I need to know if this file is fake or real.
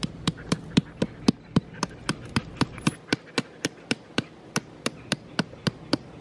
real